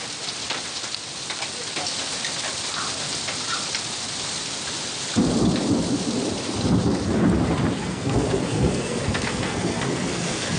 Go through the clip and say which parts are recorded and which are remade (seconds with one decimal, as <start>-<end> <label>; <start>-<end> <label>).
0.0-7.8 recorded; 7.8-10.6 remade